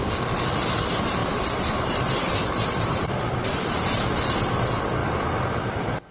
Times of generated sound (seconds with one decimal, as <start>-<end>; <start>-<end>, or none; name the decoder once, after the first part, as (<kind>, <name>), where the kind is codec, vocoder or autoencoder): 1.2-4.5 (vocoder, BigVGAN v2); 5.0-6.1